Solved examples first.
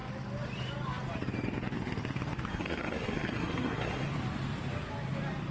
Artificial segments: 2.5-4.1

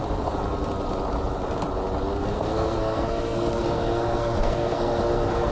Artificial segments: 2.2-5.5

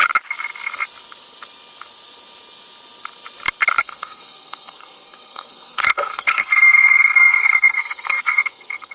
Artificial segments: 3.8-8.9